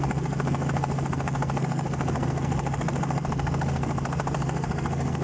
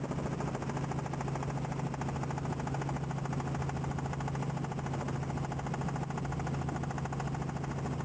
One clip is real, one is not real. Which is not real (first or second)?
first